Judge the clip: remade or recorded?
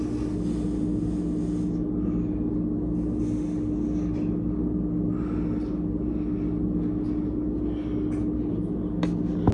recorded